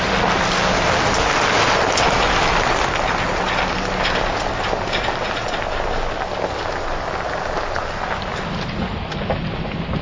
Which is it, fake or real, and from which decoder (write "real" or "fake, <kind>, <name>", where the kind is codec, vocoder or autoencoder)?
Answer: real